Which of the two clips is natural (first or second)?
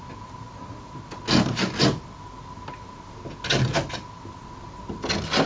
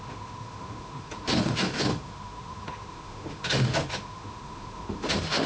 first